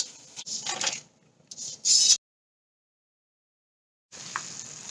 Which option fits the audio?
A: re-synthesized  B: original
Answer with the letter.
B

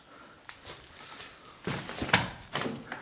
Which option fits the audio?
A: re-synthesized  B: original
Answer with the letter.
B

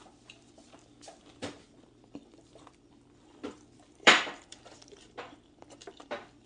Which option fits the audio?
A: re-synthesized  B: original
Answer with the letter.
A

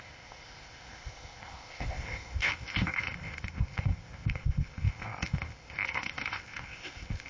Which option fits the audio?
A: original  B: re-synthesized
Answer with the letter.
B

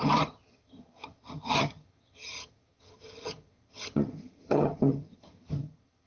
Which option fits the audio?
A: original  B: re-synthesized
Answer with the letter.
B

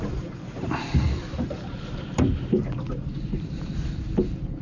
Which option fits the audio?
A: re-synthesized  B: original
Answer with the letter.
A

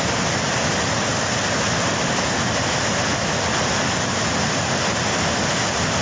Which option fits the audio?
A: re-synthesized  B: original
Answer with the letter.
B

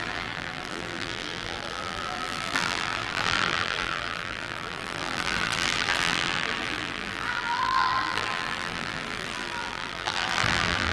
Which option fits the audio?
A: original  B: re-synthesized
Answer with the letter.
B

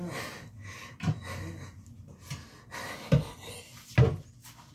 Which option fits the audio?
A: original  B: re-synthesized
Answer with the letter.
A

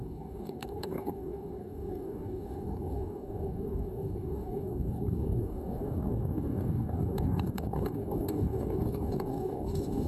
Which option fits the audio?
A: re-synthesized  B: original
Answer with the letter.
A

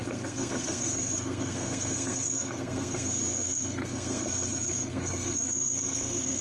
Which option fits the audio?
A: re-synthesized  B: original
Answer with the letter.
A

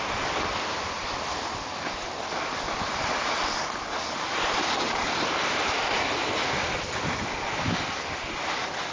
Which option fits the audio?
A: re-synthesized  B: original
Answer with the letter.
B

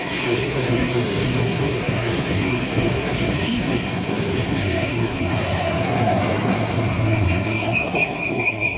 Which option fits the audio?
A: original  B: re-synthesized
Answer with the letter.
B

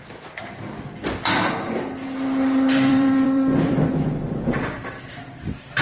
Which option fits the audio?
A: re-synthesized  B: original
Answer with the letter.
A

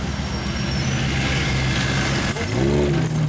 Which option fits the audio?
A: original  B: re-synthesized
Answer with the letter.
A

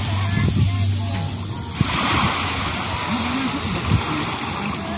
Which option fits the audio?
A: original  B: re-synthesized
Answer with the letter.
A